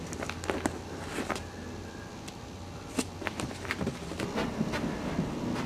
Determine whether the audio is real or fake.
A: real